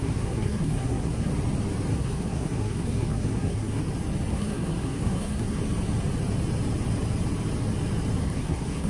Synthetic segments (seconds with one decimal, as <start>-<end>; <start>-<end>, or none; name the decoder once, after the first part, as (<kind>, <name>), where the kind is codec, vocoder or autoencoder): 0.0-1.3 (codec, SNAC); 1.9-3.8; 4.3-5.6; 8.2-8.9